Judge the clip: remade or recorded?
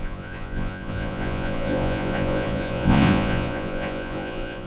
remade